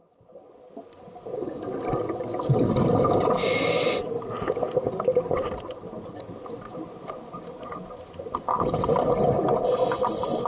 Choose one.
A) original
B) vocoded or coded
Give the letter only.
A